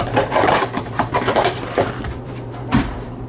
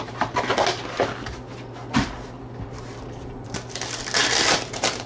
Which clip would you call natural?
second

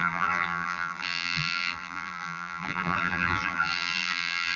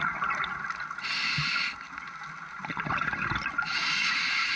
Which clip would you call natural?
second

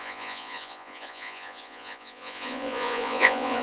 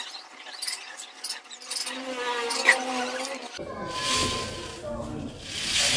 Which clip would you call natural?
second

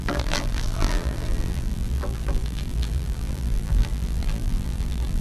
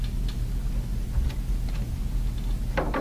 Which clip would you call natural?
second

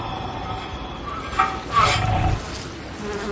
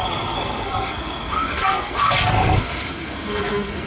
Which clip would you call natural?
first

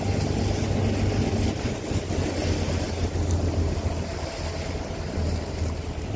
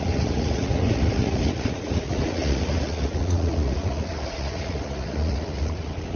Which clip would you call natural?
first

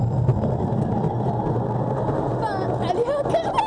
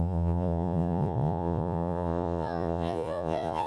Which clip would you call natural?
first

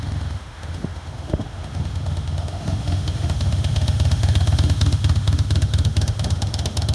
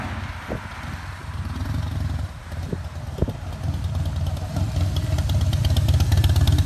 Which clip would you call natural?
second